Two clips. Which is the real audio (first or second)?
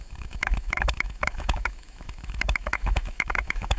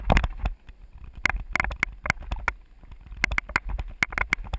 second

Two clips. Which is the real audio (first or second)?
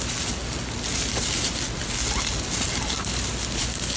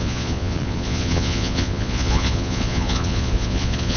first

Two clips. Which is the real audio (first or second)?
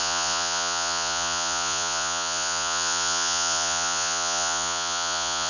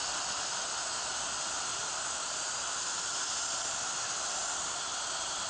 second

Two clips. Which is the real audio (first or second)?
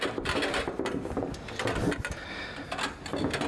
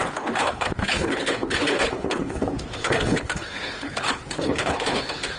first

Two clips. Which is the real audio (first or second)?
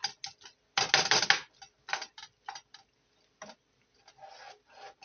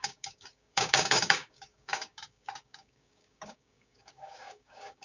first